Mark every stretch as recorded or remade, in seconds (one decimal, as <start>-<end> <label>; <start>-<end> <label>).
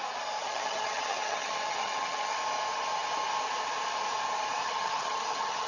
0.0-0.4 recorded; 0.4-2.4 remade; 2.4-4.6 recorded; 4.6-5.7 remade